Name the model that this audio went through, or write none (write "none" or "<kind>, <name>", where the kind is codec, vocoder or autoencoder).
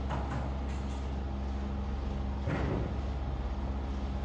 none